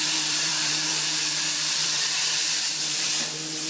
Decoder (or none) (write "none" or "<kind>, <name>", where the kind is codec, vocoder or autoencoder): vocoder, BigVGAN v2